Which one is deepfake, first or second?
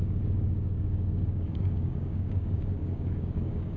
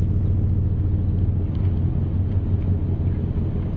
first